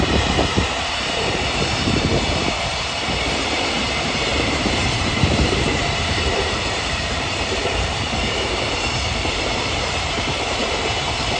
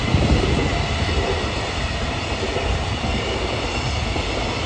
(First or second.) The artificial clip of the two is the first